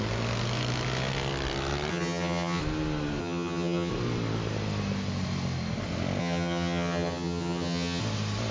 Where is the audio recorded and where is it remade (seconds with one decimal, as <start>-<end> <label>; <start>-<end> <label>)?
0.0-1.9 recorded; 1.9-2.6 remade; 2.6-3.2 recorded; 3.2-3.9 remade; 3.9-6.2 recorded; 6.2-8.0 remade; 8.0-8.5 recorded